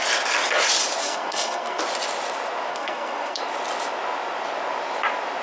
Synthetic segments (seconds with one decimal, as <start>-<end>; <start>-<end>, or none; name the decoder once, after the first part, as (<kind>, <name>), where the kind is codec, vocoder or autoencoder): 1.0-1.8 (codec, SNAC); 2.7-3.4